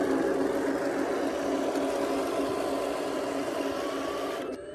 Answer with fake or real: real